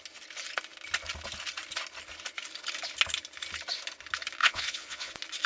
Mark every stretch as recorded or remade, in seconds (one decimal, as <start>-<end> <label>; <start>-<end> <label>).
0.0-4.4 recorded; 4.4-5.1 remade; 5.1-5.5 recorded